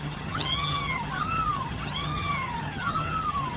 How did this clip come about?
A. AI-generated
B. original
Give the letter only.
A